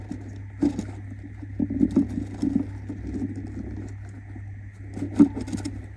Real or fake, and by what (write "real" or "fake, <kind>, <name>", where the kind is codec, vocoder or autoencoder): real